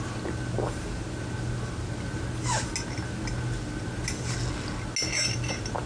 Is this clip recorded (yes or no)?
yes